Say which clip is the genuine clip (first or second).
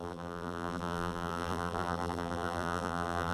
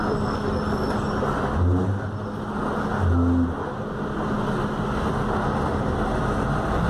second